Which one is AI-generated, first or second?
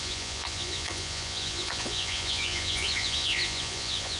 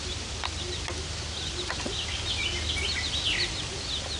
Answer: first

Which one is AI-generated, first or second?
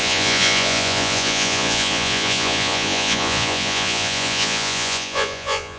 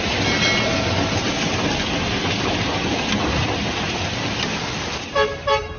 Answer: first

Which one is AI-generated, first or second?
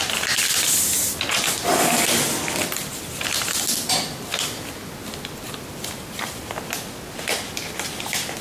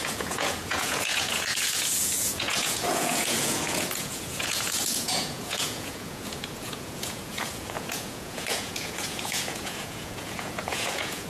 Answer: second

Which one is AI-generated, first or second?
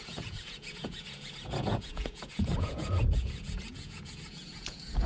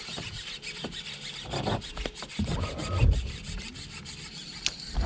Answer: first